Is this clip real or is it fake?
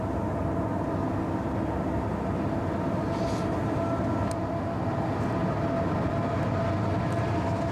real